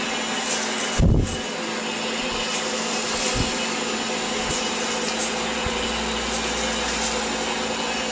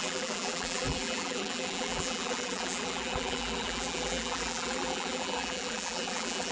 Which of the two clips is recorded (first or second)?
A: first